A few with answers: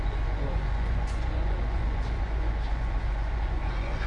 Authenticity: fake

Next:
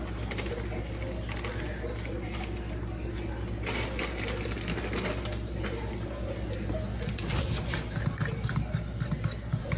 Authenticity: real